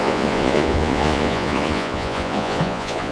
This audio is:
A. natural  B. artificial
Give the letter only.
B